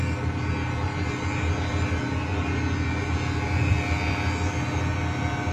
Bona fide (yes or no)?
no